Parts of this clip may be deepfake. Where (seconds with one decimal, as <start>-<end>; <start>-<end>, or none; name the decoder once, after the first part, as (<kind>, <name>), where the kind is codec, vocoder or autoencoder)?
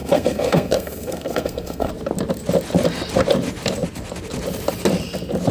0.0-1.9 (codec, SNAC)